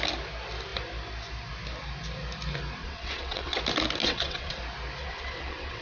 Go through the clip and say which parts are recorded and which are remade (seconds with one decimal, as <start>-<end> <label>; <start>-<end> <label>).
0.0-2.8 recorded; 2.8-3.6 remade; 3.6-4.0 recorded; 4.0-4.6 remade; 4.6-5.0 recorded; 5.0-5.8 remade